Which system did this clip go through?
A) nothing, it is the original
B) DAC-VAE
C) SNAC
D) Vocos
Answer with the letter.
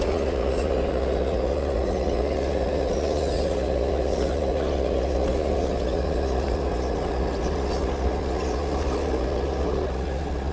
D